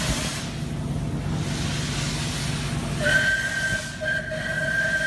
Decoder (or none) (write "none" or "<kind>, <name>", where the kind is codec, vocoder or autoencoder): none